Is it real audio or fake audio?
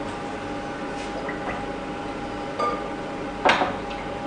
real